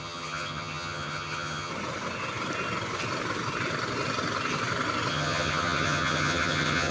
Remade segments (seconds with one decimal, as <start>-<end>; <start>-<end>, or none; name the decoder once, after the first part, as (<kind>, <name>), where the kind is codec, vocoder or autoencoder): 0.0-1.7 (vocoder, HiFi-GAN); 5.1-6.9